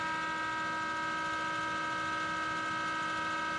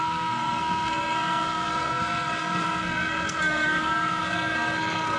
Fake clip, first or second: second